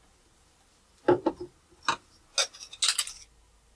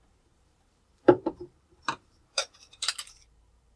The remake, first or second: second